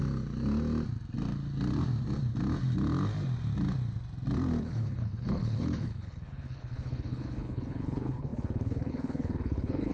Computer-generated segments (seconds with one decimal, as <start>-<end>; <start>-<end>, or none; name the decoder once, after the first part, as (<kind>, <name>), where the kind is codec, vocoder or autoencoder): 4.6-9.9 (codec, HILCodec)